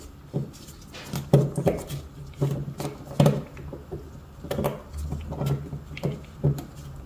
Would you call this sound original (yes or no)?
yes